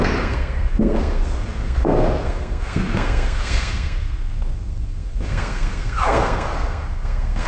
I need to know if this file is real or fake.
fake